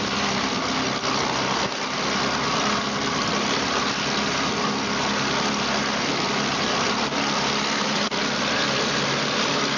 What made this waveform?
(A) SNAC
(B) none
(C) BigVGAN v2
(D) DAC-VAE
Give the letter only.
B